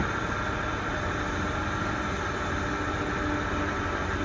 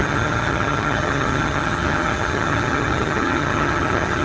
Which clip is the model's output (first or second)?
second